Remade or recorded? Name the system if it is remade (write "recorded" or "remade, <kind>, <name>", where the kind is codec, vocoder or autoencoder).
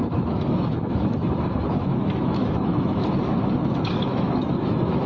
remade, autoencoder, DAC-VAE